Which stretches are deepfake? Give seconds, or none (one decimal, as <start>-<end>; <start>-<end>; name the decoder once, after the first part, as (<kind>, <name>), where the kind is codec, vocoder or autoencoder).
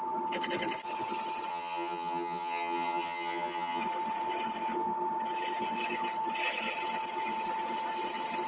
1.5-3.8 (vocoder, HiFi-GAN)